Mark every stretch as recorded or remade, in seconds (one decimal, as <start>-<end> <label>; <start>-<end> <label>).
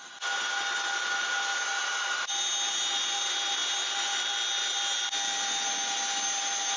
0.0-6.8 recorded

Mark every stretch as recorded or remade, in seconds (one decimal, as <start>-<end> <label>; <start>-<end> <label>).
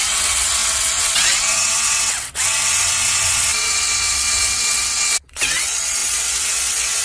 0.0-7.0 remade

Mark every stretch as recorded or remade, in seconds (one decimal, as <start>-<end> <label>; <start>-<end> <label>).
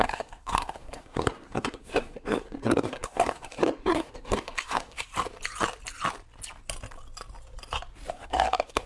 0.0-5.1 remade; 5.1-8.1 recorded; 8.1-8.9 remade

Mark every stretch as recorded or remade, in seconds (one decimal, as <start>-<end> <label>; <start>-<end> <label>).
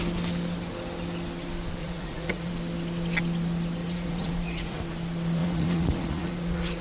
0.0-1.8 recorded; 1.8-2.5 remade; 2.5-3.8 recorded; 3.8-4.8 remade; 4.8-5.4 recorded; 5.4-6.8 remade